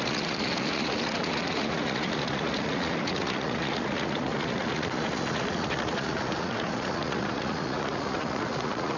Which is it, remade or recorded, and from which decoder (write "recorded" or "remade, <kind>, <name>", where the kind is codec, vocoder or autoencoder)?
remade, vocoder, Vocos